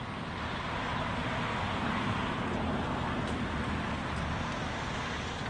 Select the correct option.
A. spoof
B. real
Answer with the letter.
B